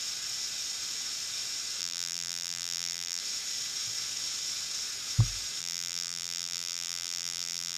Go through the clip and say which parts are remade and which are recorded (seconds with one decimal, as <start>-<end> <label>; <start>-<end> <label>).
0.0-1.8 recorded; 1.8-3.2 remade; 3.2-5.6 recorded; 5.6-7.8 remade

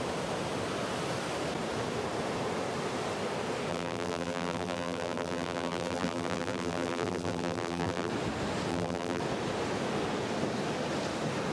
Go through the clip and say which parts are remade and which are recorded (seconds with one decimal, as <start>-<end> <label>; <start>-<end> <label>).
0.0-3.7 recorded; 3.7-8.1 remade; 8.1-8.7 recorded; 8.7-9.2 remade; 9.2-11.5 recorded

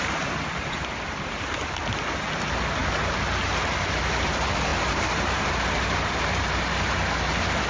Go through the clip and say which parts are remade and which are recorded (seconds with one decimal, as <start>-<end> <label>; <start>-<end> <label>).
0.0-1.8 remade; 1.8-4.7 recorded; 4.7-5.5 remade; 5.5-7.7 recorded

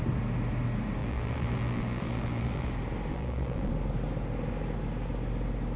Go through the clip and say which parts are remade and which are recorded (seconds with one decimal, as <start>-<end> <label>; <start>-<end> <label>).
0.0-1.0 recorded; 1.0-2.7 remade; 2.7-3.1 recorded; 3.1-3.7 remade; 3.7-5.8 recorded

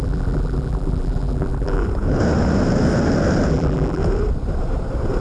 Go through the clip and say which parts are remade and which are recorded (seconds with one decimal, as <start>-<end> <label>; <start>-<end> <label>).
0.0-1.8 remade; 1.8-3.5 recorded; 3.5-4.0 remade; 4.0-5.2 recorded

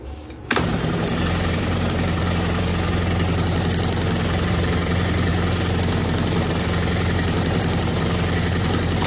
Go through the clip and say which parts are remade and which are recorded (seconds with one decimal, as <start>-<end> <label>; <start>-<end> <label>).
0.0-2.7 remade; 2.7-4.5 recorded; 4.5-5.3 remade; 5.3-6.0 recorded; 6.0-9.1 remade

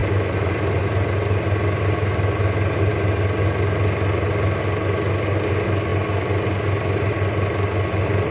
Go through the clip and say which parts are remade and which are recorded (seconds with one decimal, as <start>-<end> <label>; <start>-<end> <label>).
0.0-0.8 remade; 0.8-8.3 recorded

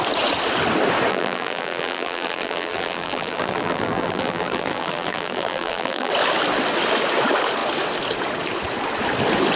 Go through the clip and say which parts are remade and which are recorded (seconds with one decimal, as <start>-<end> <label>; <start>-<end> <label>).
0.0-1.1 recorded; 1.1-6.1 remade; 6.1-9.6 recorded